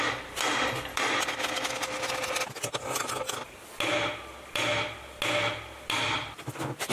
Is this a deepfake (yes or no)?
no